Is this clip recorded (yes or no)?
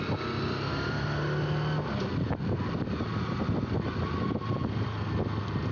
yes